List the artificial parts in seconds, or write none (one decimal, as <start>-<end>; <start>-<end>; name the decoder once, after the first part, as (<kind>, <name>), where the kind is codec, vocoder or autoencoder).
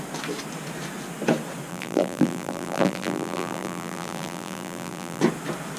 1.7-5.2 (vocoder, BigVGAN v2)